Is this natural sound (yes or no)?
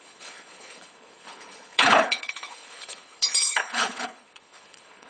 no